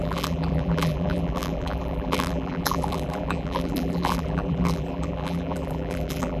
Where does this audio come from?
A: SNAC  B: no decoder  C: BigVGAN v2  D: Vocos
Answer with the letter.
C